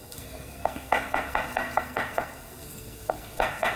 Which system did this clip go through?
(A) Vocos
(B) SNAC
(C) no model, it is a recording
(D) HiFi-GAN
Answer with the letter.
B